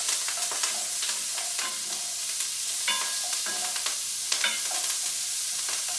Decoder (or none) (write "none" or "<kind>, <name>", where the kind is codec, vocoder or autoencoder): none